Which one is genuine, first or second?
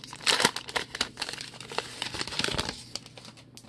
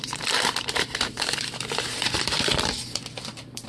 first